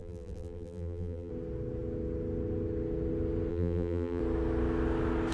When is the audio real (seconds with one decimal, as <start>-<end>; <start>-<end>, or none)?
1.3-3.5; 4.2-5.3